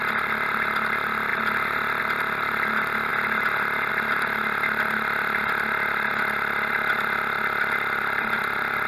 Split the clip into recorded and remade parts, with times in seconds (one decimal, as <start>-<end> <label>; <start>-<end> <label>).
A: 0.0-8.9 recorded